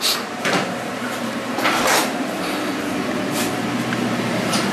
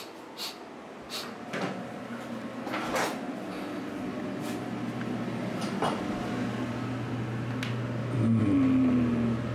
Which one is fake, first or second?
first